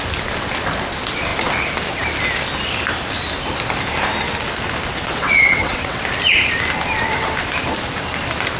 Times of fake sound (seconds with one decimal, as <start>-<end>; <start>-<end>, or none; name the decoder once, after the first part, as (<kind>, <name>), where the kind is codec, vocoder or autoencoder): 4.9-6.0 (vocoder, WaveNeXt)